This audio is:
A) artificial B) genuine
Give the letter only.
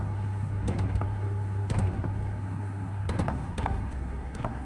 A